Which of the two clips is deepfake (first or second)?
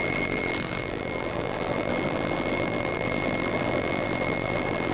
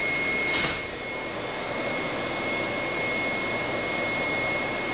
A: first